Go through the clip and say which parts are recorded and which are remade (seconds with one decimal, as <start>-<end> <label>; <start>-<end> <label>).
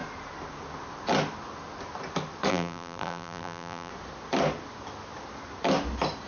0.0-2.5 recorded; 2.5-3.9 remade; 3.9-6.3 recorded